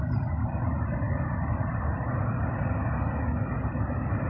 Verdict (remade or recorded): recorded